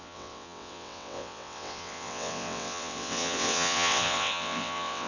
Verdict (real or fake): fake